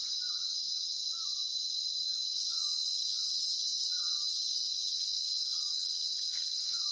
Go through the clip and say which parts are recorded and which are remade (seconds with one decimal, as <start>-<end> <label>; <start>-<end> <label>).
0.0-2.3 recorded; 2.3-3.2 remade; 3.2-4.7 recorded; 4.7-6.9 remade